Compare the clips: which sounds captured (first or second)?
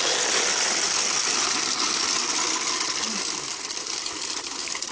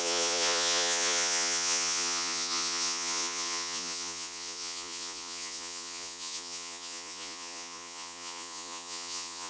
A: first